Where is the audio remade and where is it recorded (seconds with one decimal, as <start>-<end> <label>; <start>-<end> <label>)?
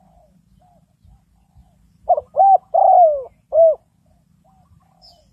0.0-5.3 recorded